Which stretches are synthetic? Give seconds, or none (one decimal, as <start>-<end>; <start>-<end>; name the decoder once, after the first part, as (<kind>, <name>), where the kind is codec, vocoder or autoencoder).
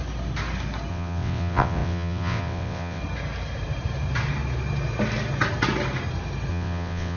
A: 0.9-3.0 (vocoder, WaveNeXt); 6.5-7.2